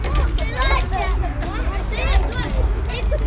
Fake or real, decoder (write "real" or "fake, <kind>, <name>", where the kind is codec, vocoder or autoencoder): real